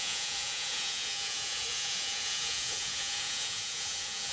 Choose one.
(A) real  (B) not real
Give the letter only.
B